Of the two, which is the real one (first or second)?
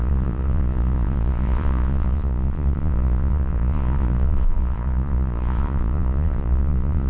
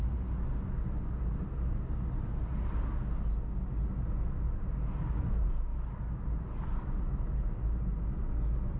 second